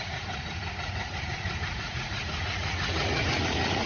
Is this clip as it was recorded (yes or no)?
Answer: no